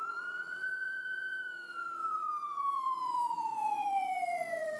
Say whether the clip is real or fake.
fake